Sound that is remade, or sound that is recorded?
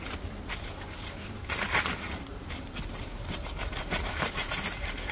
remade